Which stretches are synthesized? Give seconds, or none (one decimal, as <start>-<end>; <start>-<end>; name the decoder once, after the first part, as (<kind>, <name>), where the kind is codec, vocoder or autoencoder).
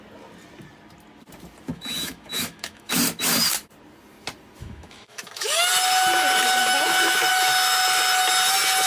1.7-2.9 (autoencoder, DAC-VAE); 4.6-5.7; 6.6-7.3